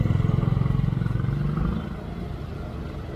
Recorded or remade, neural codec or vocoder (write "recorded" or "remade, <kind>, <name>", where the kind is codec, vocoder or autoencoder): recorded